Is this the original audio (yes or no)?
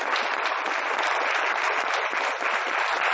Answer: yes